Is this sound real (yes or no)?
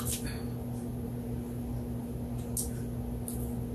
yes